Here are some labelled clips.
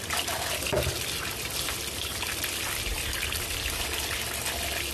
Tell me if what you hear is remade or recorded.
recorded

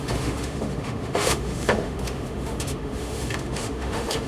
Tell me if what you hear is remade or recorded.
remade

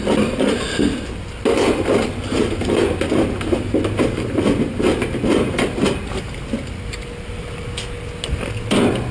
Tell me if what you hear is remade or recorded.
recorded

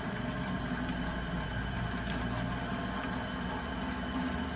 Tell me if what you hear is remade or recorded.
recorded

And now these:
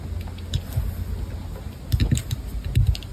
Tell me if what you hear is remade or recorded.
recorded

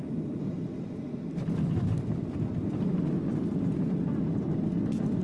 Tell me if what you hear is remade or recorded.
recorded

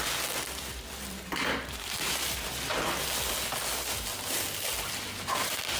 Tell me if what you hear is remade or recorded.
recorded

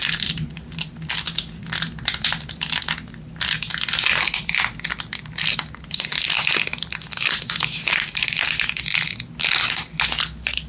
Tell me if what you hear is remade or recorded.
recorded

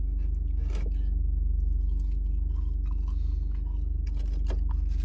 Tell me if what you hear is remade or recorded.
recorded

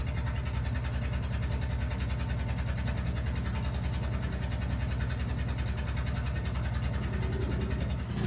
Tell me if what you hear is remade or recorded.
recorded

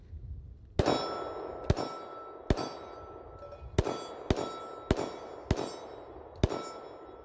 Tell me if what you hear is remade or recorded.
recorded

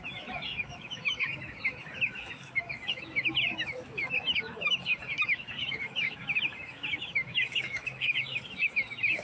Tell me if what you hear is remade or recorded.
remade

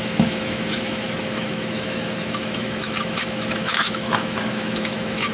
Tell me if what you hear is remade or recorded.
remade